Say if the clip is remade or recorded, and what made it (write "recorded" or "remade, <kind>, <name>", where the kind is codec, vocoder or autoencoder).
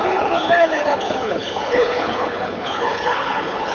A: remade, codec, HILCodec